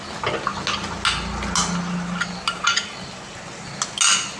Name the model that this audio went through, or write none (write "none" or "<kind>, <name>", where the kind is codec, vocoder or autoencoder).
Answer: none